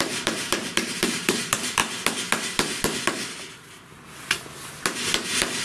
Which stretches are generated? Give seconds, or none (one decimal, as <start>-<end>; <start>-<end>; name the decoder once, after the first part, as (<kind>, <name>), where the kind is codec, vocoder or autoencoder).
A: 0.0-1.8 (vocoder, BigVGAN v2)